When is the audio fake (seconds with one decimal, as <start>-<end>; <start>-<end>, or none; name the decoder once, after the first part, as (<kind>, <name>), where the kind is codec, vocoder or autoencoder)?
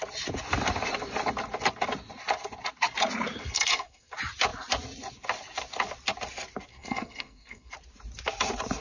3.4-4.1 (codec, SNAC); 6.7-7.7